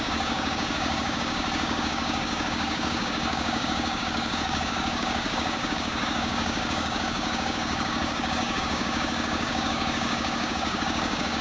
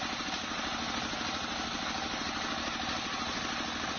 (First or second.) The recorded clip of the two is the second